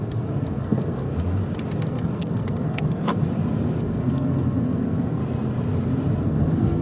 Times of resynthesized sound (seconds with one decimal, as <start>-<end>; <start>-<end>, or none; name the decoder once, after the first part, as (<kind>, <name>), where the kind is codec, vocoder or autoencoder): 0.0-1.1 (codec, SNAC); 1.8-3.2; 3.8-5.2; 6.2-6.8